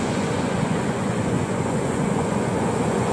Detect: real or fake fake